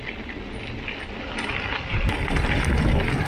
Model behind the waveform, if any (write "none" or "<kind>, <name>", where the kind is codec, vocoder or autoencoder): none